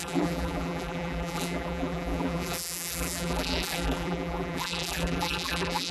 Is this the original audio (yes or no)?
no